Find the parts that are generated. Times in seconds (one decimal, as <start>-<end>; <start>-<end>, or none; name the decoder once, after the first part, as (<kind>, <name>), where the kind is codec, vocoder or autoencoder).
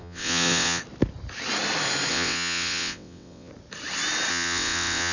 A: 0.0-0.8 (vocoder, WaveNeXt); 2.1-3.5; 4.3-5.1